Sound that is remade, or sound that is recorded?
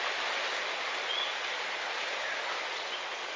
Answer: recorded